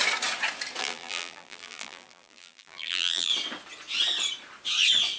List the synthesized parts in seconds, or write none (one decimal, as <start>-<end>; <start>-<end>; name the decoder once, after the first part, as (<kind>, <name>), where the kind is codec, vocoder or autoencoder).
0.8-3.3 (vocoder, BigVGAN v2)